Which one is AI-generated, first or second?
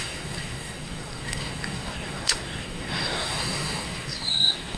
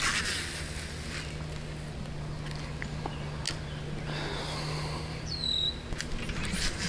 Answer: first